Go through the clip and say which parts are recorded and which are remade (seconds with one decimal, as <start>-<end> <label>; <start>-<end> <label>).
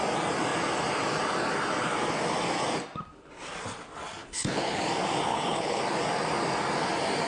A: 0.0-4.2 recorded; 4.2-4.8 remade; 4.8-5.3 recorded; 5.3-5.8 remade; 5.8-7.3 recorded